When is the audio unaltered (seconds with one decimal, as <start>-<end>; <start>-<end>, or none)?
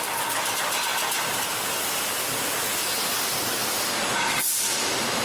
0.0-5.2